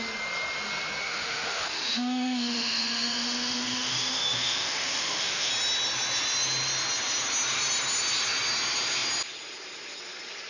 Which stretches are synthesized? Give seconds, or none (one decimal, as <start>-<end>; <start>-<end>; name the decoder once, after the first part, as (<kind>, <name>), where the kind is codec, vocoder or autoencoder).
1.0-5.5 (autoencoder, DAC-VAE)